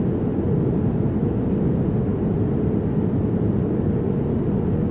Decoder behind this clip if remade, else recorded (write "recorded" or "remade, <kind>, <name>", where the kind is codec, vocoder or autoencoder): recorded